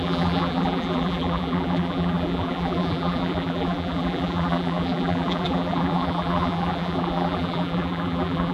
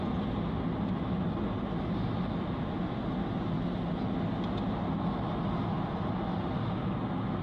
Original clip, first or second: second